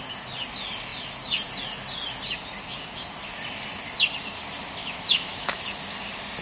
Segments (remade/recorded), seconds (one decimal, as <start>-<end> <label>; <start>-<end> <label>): 0.0-4.8 recorded; 4.8-5.6 remade; 5.6-6.4 recorded